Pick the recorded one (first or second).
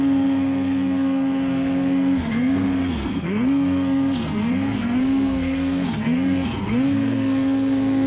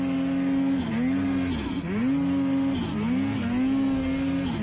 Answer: second